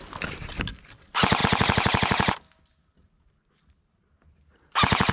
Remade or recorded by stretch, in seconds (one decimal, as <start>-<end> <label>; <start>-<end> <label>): 0.0-5.1 recorded